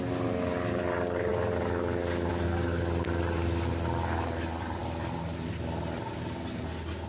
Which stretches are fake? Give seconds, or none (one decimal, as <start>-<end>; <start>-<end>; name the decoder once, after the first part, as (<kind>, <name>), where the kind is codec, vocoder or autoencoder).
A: none